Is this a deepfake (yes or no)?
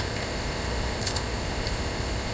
yes